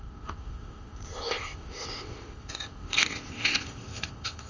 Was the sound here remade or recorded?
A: remade